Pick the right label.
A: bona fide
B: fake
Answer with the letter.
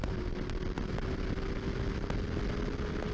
A